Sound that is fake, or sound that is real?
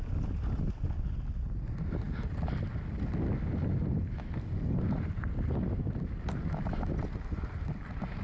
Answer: real